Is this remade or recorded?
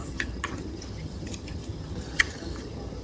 remade